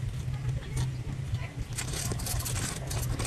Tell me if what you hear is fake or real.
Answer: real